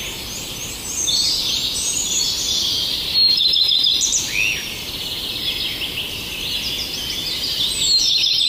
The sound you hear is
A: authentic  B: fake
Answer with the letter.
A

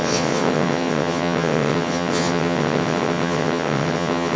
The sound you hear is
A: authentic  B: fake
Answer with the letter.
B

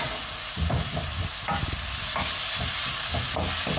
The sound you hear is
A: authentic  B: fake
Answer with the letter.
A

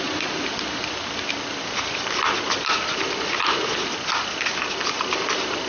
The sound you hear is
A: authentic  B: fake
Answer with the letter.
A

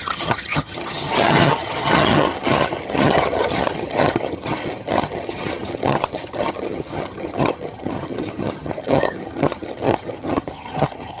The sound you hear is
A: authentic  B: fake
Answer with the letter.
B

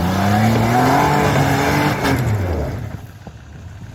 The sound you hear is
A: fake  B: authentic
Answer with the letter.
B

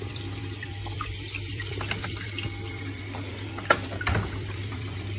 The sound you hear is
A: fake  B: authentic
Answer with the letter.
A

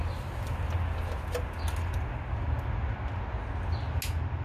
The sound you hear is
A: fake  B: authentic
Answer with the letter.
B